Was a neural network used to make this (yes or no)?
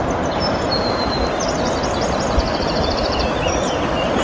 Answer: no